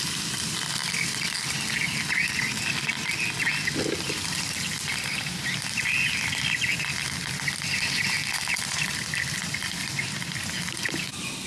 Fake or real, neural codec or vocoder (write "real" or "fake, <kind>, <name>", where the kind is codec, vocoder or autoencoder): real